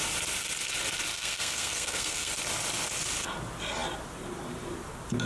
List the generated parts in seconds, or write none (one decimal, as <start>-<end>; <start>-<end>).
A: 1.1-2.3